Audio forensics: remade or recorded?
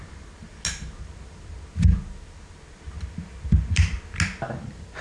recorded